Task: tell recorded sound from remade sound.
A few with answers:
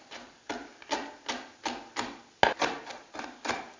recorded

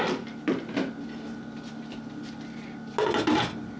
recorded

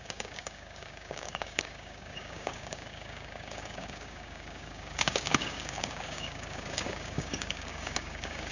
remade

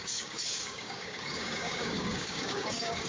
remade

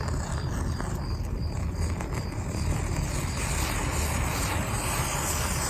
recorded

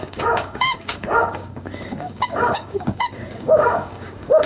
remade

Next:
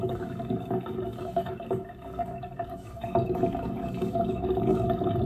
remade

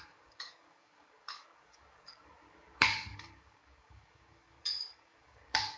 remade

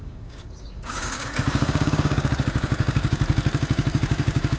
remade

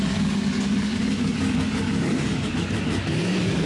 remade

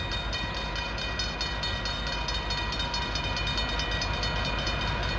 recorded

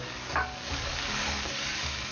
remade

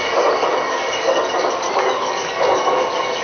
remade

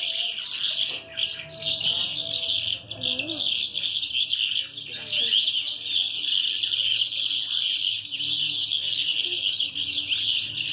recorded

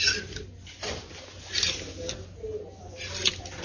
recorded